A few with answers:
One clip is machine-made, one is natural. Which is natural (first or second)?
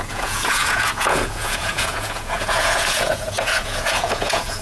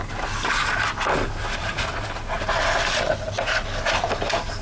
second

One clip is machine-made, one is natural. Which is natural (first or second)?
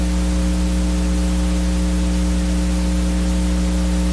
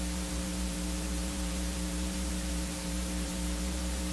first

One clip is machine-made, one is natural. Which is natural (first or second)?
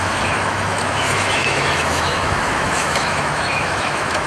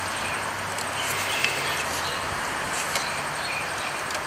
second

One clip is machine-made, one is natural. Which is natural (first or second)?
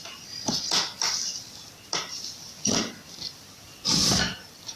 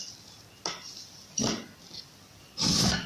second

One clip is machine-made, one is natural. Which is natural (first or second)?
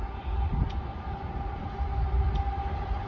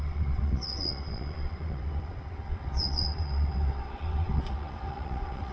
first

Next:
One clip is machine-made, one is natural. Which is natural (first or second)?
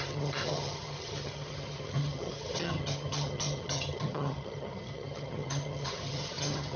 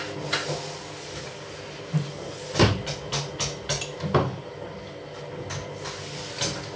second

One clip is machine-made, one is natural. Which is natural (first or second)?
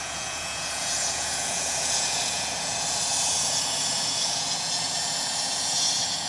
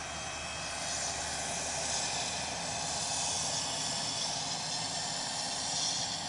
second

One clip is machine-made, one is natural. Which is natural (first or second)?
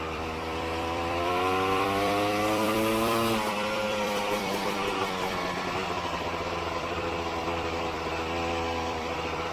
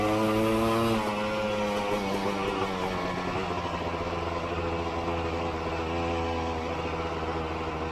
second